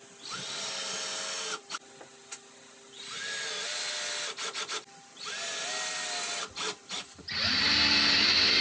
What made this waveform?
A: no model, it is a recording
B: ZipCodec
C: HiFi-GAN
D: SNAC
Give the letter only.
A